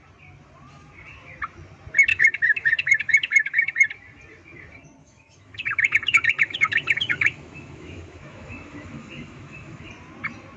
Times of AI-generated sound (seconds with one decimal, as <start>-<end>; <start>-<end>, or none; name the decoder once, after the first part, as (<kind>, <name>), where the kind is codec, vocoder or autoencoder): 2.1-3.7 (autoencoder, DAC-VAE); 5.0-9.9